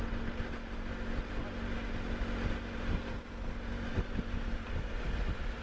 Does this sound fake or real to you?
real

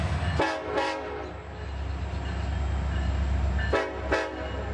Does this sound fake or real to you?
real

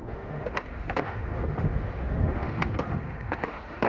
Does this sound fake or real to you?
fake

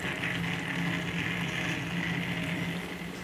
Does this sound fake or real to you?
real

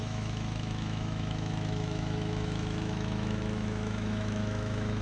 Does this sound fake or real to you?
fake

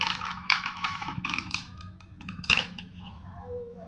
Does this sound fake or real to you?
fake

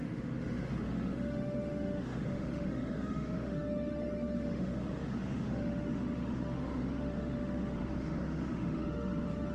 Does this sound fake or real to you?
fake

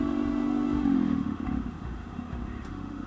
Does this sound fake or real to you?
fake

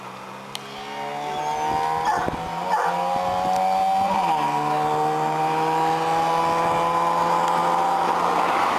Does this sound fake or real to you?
real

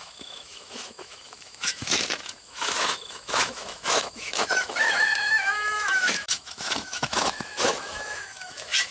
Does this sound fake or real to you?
fake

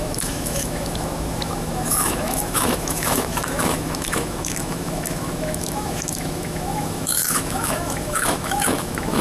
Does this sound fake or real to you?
fake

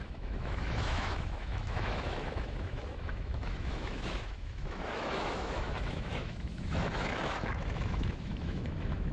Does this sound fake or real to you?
fake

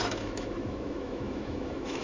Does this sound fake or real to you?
fake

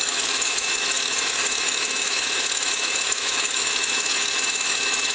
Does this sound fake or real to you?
fake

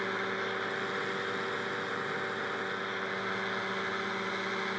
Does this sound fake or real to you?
real